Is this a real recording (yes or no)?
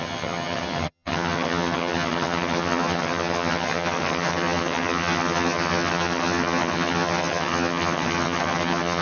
no